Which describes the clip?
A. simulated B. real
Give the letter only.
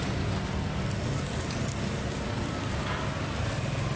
B